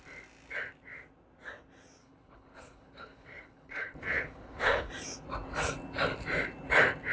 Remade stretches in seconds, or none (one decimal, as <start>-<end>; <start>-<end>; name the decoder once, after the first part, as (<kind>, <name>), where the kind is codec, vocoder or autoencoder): 2.0-4.9 (codec, HILCodec)